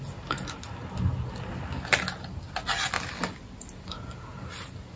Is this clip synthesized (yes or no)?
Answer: no